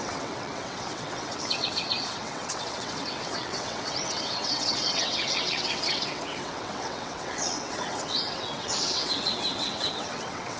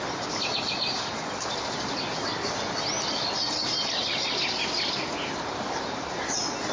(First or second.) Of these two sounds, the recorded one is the second